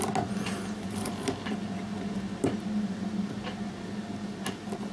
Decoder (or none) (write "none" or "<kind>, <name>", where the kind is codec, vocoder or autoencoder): none